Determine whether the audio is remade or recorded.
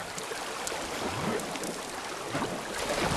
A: recorded